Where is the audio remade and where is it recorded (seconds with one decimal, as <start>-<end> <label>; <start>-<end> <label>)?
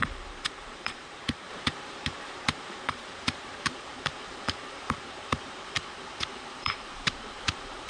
0.0-7.9 remade